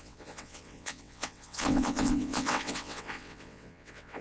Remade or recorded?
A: remade